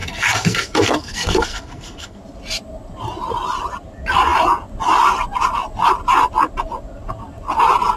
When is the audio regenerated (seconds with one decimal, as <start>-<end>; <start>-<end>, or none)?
0.0-2.2